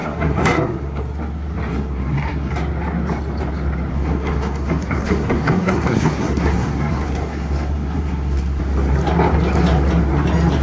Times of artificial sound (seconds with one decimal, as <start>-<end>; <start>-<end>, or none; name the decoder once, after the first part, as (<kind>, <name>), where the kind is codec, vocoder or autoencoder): 0.0-1.0 (codec, SNAC); 1.7-2.5; 3.9-8.6